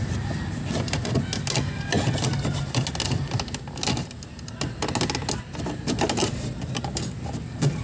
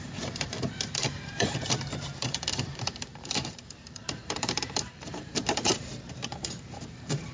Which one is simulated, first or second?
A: second